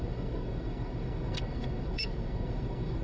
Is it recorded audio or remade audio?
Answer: remade